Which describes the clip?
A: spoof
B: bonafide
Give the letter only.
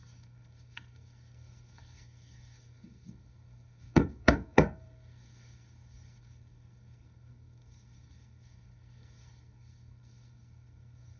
A